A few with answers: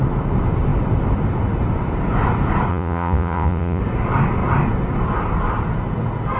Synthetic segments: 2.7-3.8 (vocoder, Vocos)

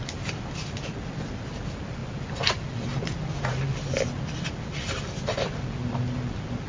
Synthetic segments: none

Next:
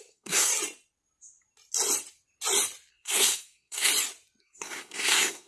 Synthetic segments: 0.0-0.5 (codec, SNAC); 2.9-3.9; 4.4-5.5